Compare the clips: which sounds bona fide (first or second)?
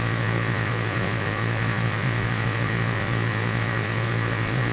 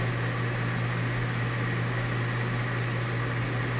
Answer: second